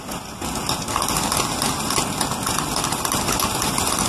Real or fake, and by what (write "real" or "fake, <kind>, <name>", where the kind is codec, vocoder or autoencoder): real